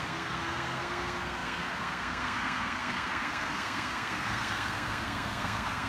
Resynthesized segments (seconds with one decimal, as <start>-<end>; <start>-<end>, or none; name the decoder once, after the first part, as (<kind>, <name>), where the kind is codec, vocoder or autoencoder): 0.0-5.9 (codec, SNAC)